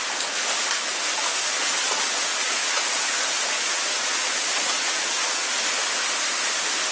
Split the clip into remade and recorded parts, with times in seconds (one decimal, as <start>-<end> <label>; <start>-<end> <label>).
0.0-1.4 recorded; 1.4-5.5 remade; 5.5-6.9 recorded